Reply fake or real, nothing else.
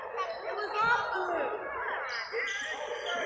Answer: real